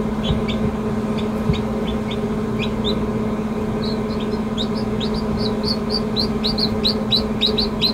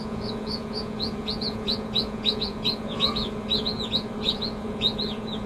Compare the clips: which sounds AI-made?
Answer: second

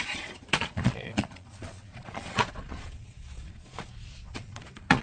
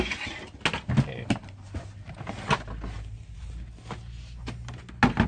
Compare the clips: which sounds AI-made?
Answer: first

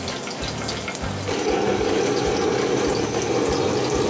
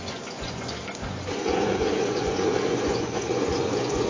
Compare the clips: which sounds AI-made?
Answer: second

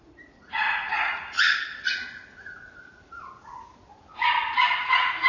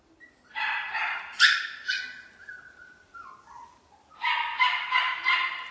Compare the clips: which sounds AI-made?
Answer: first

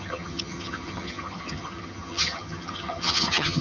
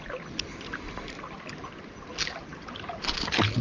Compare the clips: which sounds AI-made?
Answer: first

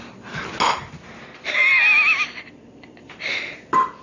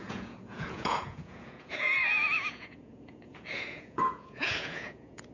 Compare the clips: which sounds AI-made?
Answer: second